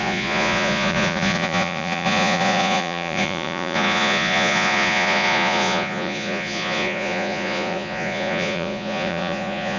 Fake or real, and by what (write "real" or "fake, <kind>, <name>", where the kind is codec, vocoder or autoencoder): fake, vocoder, Vocos